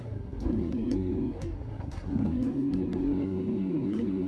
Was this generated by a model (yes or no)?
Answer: yes